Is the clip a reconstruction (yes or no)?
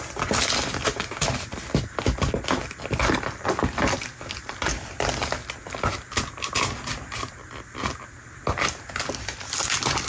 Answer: no